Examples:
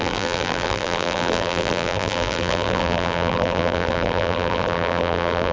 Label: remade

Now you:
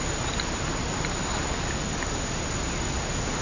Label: recorded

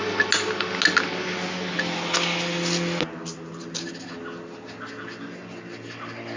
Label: recorded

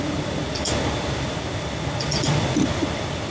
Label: recorded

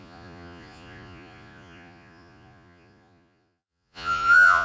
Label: remade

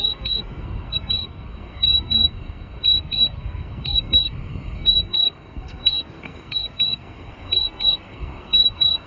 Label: remade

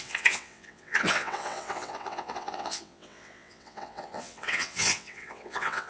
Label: remade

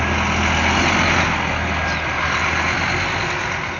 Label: recorded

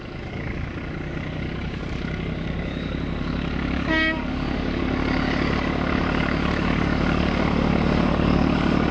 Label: remade